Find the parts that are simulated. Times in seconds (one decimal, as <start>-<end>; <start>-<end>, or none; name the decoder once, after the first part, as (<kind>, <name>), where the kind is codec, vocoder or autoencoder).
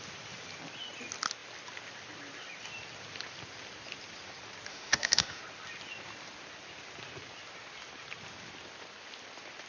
4.7-5.4 (autoencoder, DAC-VAE)